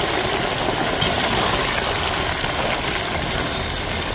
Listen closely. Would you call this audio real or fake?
real